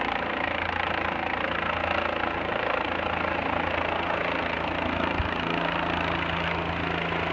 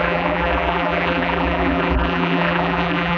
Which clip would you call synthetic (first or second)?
second